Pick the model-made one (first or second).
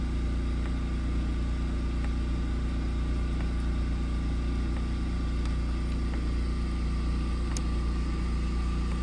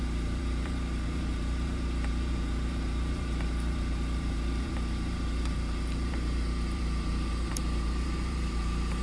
second